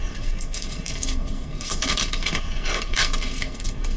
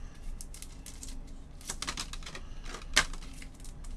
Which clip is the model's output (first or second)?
first